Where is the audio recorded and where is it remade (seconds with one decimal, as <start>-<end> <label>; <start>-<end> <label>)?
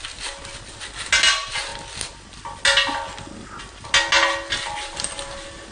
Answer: 0.0-5.7 recorded